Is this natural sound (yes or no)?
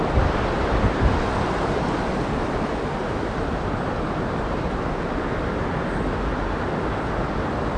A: yes